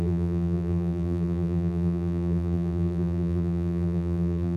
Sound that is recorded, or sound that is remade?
remade